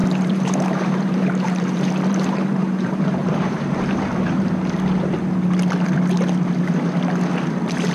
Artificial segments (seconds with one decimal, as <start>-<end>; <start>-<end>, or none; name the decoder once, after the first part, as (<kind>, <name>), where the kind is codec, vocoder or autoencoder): 0.0-4.5 (vocoder, BigVGAN v2)